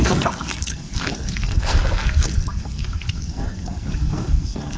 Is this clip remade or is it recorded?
remade